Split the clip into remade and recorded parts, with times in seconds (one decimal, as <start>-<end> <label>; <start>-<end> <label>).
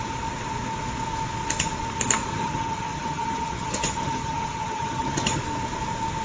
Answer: 0.0-2.3 recorded; 2.3-5.4 remade; 5.4-6.2 recorded